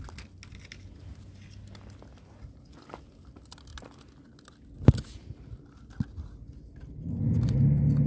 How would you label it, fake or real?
real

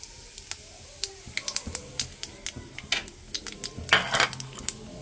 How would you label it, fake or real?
real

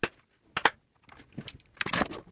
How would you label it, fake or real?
real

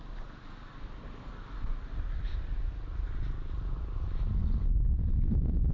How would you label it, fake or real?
real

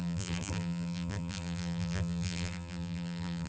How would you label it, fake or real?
fake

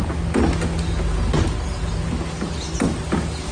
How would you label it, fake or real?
real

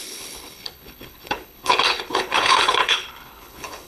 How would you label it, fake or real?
fake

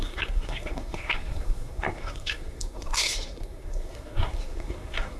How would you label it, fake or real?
fake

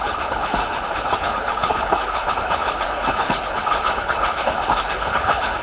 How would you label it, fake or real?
fake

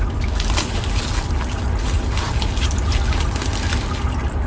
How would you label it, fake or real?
real